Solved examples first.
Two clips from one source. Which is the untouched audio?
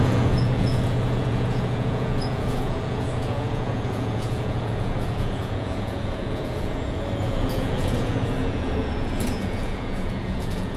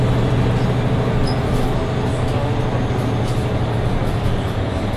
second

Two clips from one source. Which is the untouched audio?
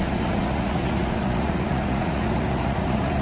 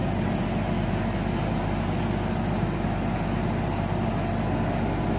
second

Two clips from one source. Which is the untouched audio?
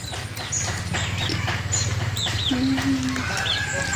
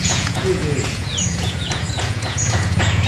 first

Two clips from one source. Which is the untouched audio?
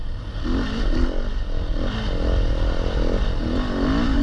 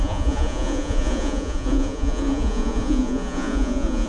first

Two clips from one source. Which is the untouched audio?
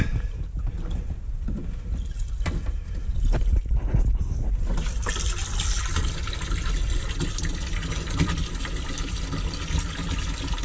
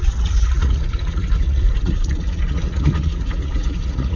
first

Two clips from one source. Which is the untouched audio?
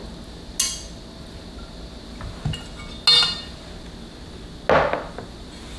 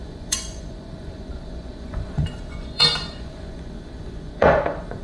first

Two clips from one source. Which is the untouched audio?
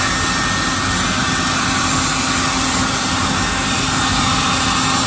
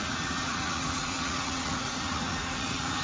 first